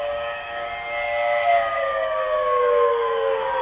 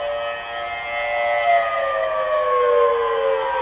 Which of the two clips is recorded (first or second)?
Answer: second